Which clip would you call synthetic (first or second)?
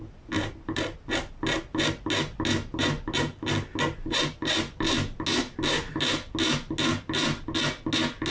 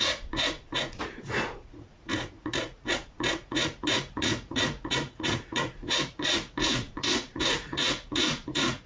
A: second